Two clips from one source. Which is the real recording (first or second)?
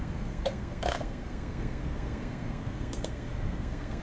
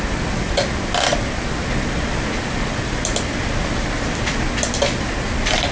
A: second